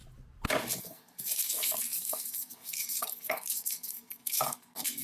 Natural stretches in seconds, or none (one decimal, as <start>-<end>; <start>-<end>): 0.0-0.8

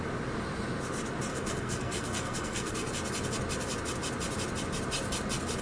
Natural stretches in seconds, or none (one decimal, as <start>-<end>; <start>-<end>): 0.0-1.3; 2.9-5.6

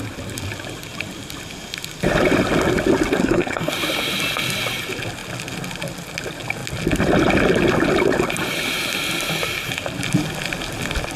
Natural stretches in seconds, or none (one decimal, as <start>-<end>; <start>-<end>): 0.0-3.2; 3.7-11.2

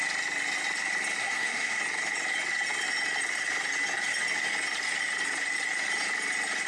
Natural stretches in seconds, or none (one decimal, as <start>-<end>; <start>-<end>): 0.0-1.2; 1.8-6.7